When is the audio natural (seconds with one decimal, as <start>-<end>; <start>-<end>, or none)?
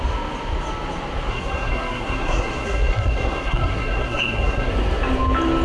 0.0-1.3; 4.7-5.6